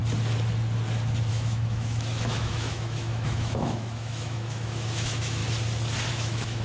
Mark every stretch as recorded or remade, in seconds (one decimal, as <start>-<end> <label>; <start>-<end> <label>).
0.0-1.3 recorded; 1.3-5.4 remade; 5.4-6.1 recorded; 6.1-6.6 remade